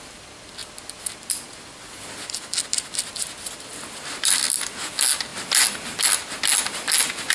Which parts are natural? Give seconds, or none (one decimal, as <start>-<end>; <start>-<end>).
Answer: 0.0-7.3